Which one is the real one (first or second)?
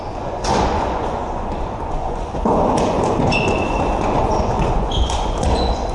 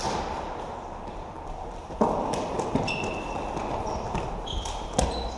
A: second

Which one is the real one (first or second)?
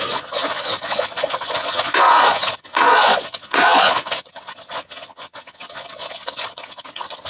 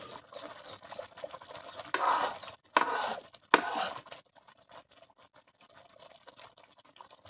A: second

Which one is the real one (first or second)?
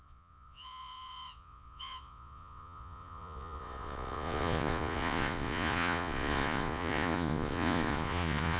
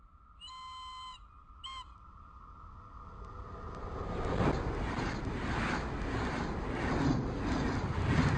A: second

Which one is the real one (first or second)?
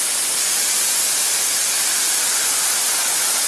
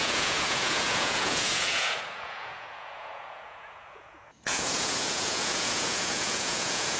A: first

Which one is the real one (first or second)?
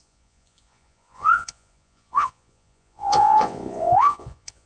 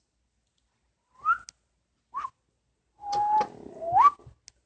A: second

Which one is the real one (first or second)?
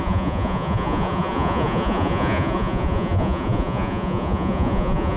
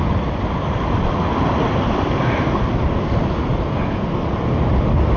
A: second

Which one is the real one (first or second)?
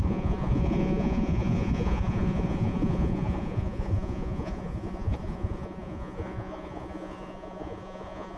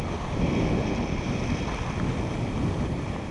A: second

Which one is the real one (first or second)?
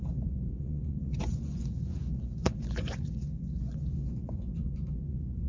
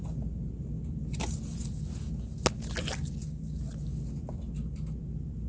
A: second